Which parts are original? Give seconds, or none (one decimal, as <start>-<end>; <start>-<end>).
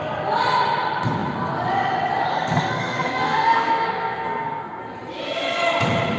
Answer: 0.0-2.3; 4.8-6.2